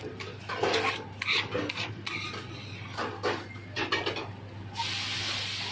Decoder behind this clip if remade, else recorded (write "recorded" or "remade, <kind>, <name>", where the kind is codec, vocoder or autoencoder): recorded